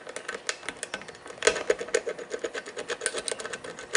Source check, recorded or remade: recorded